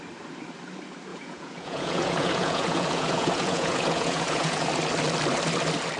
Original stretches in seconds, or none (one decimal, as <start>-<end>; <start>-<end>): 0.0-1.1; 4.7-6.0